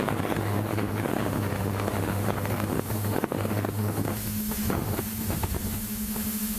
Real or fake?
fake